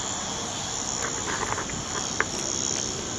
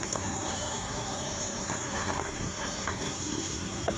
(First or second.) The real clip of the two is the first